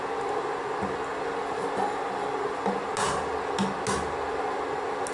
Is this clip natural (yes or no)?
yes